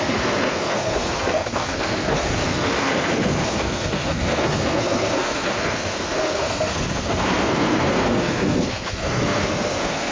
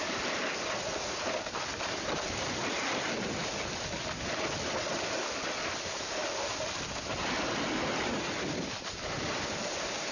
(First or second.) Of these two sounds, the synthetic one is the first